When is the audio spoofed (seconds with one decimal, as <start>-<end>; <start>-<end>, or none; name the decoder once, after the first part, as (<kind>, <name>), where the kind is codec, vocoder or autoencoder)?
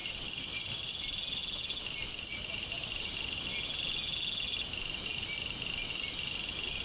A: 0.0-0.9 (vocoder, BigVGAN v2)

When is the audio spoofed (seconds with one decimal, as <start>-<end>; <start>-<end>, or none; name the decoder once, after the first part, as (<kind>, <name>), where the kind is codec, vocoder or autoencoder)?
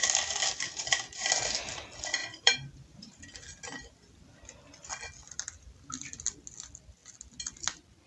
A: 2.2-3.2 (vocoder, BigVGAN v2)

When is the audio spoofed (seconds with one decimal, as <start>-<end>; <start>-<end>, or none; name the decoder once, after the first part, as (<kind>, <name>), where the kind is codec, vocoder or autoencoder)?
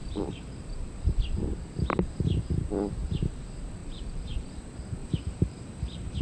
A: 0.0-1.0 (vocoder, BigVGAN v2); 3.8-4.5; 5.0-6.2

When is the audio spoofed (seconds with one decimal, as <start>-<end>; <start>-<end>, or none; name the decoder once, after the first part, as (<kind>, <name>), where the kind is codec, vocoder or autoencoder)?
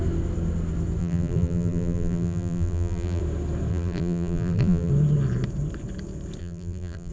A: 1.0-3.2 (vocoder, BigVGAN v2); 3.7-4.9; 6.4-7.1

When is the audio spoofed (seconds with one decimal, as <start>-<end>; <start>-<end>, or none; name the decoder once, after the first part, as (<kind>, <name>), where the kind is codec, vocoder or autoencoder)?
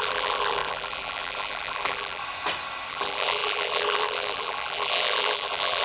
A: 0.0-2.2 (vocoder, BigVGAN v2); 2.9-5.8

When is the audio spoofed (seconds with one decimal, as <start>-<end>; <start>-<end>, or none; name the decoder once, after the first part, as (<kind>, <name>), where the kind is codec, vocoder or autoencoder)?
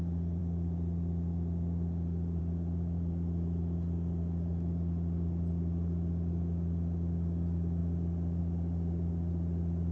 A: none